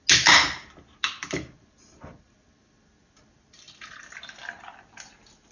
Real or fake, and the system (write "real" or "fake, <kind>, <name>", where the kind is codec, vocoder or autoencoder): real